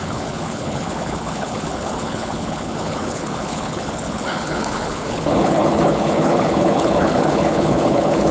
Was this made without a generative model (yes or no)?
no